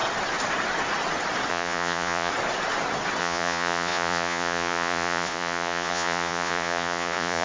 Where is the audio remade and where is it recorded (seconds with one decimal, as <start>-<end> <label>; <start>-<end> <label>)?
0.0-1.5 recorded; 1.5-2.3 remade; 2.3-3.2 recorded; 3.2-7.4 remade